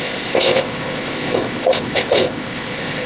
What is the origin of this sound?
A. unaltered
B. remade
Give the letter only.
B